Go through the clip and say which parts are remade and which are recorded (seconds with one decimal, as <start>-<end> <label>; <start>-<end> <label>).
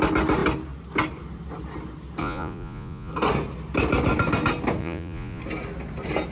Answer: 0.0-2.2 recorded; 2.2-3.1 remade; 3.1-4.8 recorded; 4.8-5.4 remade; 5.4-6.3 recorded